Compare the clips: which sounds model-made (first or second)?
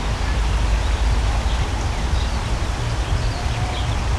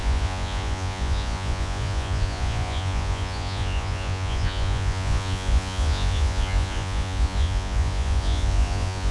second